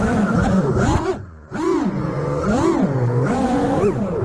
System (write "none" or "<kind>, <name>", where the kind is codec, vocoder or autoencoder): vocoder, Vocos